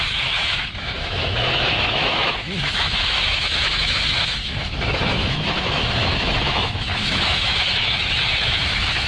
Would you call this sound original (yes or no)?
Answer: no